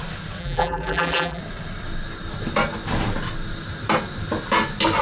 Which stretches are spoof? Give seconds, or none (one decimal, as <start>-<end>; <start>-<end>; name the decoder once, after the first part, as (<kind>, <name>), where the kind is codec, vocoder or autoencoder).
0.4-1.4 (vocoder, BigVGAN v2)